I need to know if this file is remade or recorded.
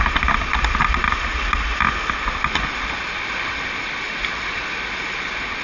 recorded